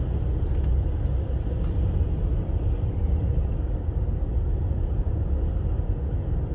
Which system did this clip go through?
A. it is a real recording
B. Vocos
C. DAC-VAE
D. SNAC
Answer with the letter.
A